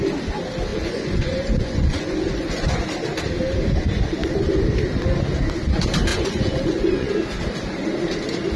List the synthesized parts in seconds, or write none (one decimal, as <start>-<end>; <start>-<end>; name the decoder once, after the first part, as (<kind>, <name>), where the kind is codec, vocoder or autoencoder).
0.7-2.8 (vocoder, Vocos); 6.1-7.1